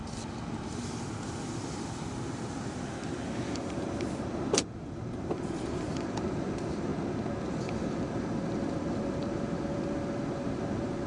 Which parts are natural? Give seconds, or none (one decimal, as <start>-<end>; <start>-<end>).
6.9-7.5